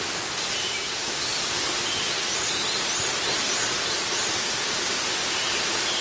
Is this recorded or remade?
recorded